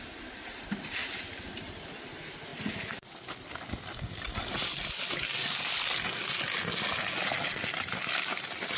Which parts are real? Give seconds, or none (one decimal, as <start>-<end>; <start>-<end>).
0.0-1.0; 2.0-8.8